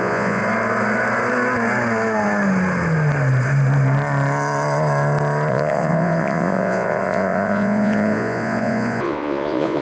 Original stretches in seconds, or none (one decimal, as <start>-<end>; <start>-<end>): 0.4-5.5